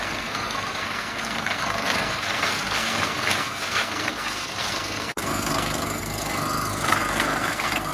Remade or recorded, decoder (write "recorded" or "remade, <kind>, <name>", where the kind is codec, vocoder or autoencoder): remade, codec, SNAC